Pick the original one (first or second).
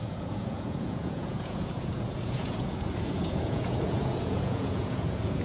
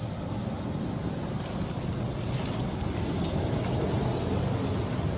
second